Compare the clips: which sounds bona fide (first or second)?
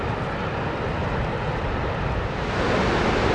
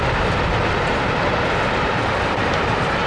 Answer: first